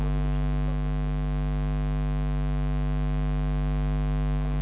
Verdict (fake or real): real